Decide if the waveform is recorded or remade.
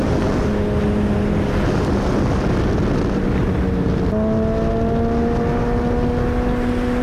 recorded